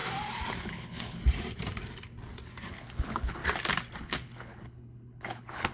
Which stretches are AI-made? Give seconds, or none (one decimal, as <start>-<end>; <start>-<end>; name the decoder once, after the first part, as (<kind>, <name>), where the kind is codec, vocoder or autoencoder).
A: 0.6-1.2 (codec, HILCodec); 2.7-3.4; 4.0-5.7

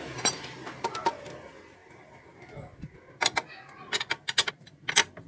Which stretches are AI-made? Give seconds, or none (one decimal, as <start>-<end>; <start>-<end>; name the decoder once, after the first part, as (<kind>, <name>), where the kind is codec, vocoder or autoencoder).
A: none